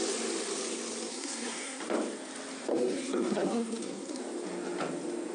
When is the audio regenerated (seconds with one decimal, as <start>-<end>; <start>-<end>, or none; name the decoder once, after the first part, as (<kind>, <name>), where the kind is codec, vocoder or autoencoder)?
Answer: 1.1-1.8 (codec, SNAC); 2.7-4.2